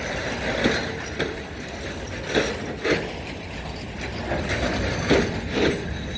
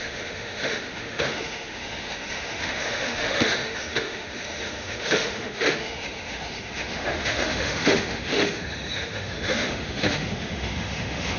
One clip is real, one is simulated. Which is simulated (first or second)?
second